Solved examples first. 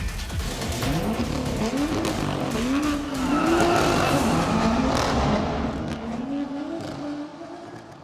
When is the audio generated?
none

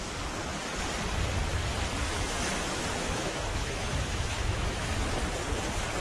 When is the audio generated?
2.0-4.9 (autoencoder, DAC-VAE)

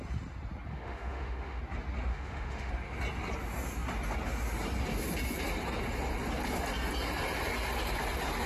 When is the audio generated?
0.7-1.6 (autoencoder, DAC-VAE); 2.1-2.7

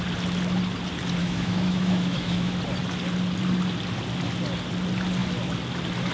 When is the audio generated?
1.2-2.5 (autoencoder, DAC-VAE)

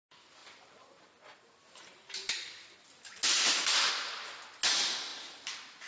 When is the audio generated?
none

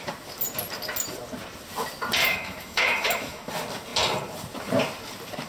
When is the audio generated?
2.2-3.5 (autoencoder, DAC-VAE)